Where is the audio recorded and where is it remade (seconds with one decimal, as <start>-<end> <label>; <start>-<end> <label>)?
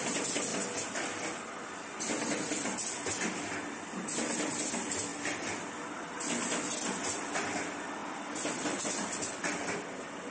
0.0-10.3 recorded